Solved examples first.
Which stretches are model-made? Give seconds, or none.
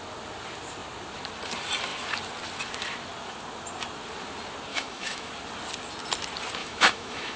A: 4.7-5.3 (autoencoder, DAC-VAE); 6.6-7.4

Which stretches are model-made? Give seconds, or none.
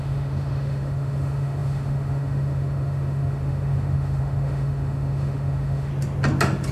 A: 0.0-5.9 (autoencoder, DAC-VAE)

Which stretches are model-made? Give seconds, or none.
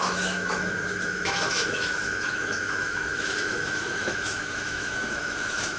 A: 0.0-5.8 (autoencoder, DAC-VAE)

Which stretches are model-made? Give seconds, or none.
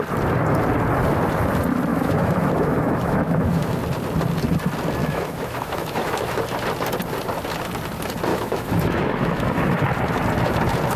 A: 1.9-3.8 (autoencoder, DAC-VAE); 5.0-6.4; 8.3-9.8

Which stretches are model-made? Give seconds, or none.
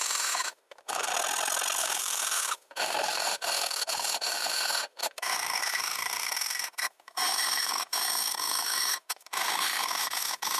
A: 0.0-1.1 (autoencoder, DAC-VAE); 1.8-10.6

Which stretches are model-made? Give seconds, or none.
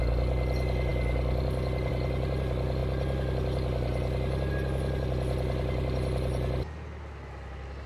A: none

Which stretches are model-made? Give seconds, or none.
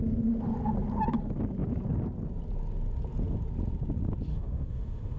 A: 4.3-5.2 (autoencoder, DAC-VAE)